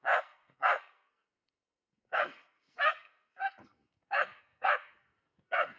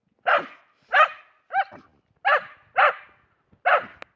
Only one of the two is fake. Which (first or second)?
first